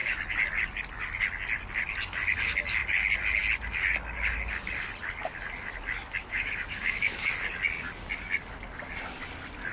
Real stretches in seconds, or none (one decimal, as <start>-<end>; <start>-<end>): 0.0-6.2; 7.3-9.7